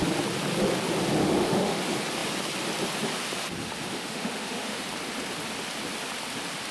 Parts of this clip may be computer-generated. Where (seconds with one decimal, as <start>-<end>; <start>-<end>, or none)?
1.2-1.8; 3.6-4.8